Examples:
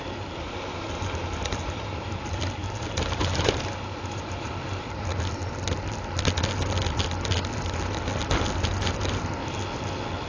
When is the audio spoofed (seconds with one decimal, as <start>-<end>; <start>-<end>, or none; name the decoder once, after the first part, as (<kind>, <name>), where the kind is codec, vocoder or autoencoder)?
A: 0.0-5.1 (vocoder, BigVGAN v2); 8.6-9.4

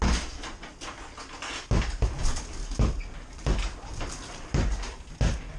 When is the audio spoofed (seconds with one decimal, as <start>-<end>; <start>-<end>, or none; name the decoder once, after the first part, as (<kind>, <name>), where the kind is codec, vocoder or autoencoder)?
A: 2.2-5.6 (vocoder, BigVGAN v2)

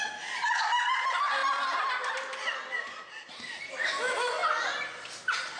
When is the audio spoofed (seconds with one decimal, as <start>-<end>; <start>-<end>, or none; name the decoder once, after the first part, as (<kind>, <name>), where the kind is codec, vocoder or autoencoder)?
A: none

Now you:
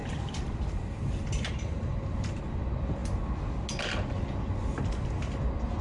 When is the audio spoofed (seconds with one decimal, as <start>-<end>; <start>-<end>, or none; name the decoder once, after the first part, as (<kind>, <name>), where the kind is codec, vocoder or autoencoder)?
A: 0.0-2.1 (vocoder, BigVGAN v2)

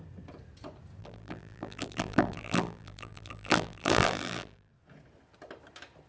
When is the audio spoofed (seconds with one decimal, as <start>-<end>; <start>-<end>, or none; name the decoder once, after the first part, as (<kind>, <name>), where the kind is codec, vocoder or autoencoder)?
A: 1.0-4.7 (vocoder, BigVGAN v2)